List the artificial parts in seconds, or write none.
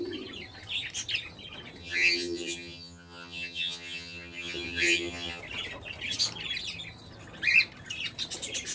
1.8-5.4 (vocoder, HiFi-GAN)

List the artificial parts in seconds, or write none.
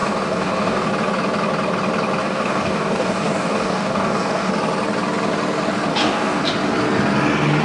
0.0-0.9 (codec, DAC); 2.2-4.5; 5.9-6.4